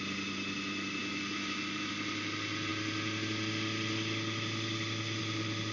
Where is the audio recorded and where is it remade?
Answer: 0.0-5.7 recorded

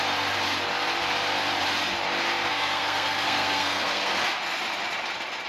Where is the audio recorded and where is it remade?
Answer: 0.0-2.5 recorded; 2.5-4.1 remade; 4.1-5.5 recorded

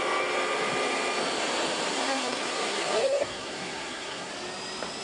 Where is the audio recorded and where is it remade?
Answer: 0.0-1.9 recorded; 1.9-4.3 remade; 4.3-5.0 recorded

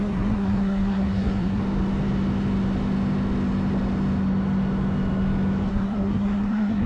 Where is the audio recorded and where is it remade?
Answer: 0.0-1.6 remade; 1.6-5.7 recorded; 5.7-6.9 remade

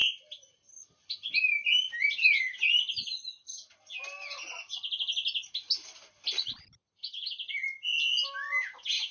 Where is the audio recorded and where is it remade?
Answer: 0.0-9.1 recorded

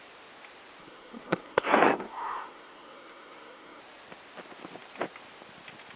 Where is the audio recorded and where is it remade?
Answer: 0.0-0.8 recorded; 0.8-3.8 remade; 3.8-6.0 recorded

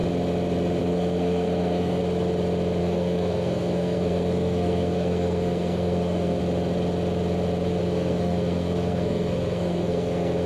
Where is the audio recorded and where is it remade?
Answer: 0.0-0.8 recorded; 0.8-2.0 remade; 2.0-2.8 recorded; 2.8-6.4 remade; 6.4-7.8 recorded; 7.8-10.5 remade

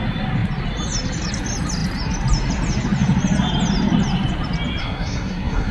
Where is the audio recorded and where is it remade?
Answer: 0.0-4.8 recorded; 4.8-5.7 remade